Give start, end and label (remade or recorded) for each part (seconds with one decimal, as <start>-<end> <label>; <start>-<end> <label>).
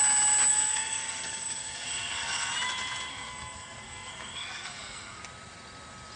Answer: 0.0-0.5 recorded; 0.5-2.5 remade; 2.5-3.1 recorded; 3.1-5.2 remade; 5.2-6.2 recorded